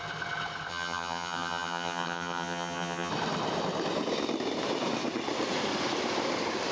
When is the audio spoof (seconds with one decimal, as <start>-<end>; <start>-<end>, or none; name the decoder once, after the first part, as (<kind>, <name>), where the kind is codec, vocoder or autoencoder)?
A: 0.7-3.1 (vocoder, HiFi-GAN)